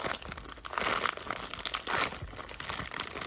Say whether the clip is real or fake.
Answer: real